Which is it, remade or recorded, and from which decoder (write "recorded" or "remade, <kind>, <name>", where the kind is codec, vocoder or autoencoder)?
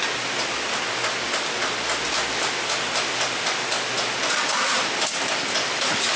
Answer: recorded